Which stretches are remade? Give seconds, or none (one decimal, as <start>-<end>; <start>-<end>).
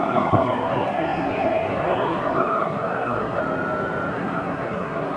0.0-3.4; 4.1-5.2